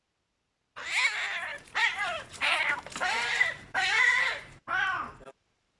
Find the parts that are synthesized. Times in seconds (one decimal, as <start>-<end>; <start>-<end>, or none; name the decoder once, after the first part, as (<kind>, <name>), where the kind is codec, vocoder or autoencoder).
1.5-3.9 (vocoder, BigVGAN v2); 4.4-5.8